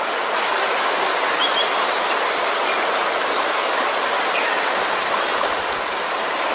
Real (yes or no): yes